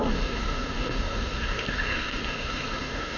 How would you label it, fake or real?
fake